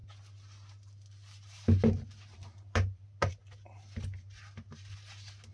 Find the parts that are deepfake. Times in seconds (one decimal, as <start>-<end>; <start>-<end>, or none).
none